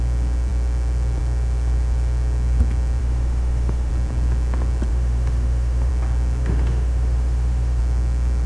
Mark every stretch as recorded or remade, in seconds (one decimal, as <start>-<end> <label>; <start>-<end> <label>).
0.0-3.0 recorded; 3.0-3.9 remade; 3.9-4.9 recorded; 4.9-5.9 remade; 5.9-6.4 recorded; 6.4-7.8 remade; 7.8-8.5 recorded